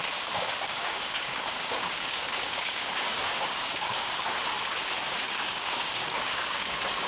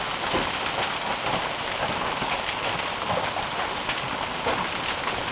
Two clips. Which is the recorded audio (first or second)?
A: second